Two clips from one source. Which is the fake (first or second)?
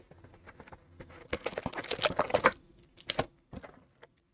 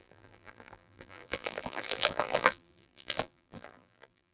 second